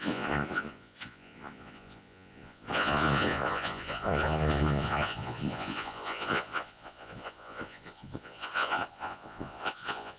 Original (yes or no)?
no